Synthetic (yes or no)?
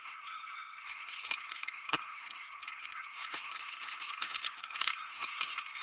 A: yes